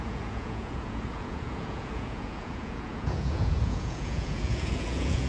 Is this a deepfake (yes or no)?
yes